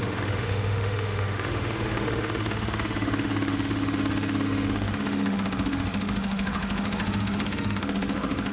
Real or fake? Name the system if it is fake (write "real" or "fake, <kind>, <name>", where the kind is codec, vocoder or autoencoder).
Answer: fake, autoencoder, DAC-VAE